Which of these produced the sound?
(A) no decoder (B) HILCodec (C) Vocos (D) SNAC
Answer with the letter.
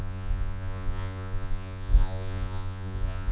C